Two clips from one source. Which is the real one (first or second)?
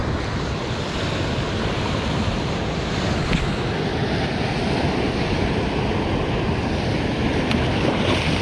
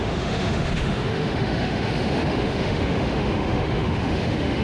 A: first